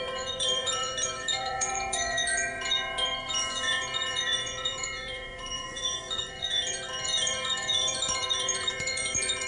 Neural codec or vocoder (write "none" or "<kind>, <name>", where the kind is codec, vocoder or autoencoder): vocoder, Vocos